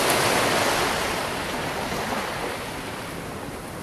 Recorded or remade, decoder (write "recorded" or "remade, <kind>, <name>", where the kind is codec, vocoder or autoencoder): recorded